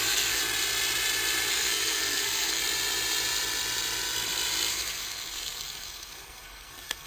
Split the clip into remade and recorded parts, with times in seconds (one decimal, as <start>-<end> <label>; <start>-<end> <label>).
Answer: 0.0-0.4 remade; 0.4-1.5 recorded; 1.5-2.6 remade; 2.6-4.7 recorded; 4.7-7.1 remade